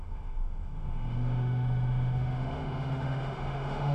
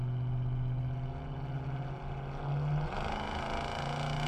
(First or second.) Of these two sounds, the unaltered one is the second